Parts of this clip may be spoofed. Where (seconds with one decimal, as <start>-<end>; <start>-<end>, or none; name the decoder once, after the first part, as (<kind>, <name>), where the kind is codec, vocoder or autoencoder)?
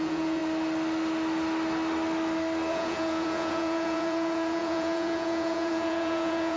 0.0-0.4 (vocoder, Vocos); 2.7-6.6